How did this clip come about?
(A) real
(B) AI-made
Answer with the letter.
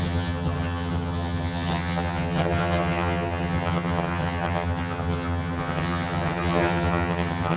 B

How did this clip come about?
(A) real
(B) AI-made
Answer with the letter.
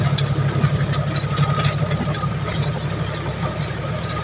A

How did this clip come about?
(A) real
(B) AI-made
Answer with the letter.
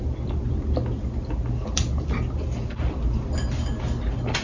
A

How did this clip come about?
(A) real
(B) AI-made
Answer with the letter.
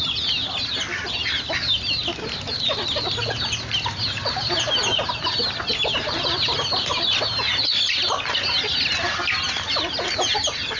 A